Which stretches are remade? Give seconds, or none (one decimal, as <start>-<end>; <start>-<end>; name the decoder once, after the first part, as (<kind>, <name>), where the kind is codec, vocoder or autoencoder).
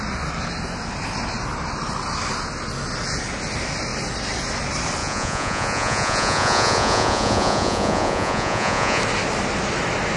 5.0-9.0 (vocoder, Vocos)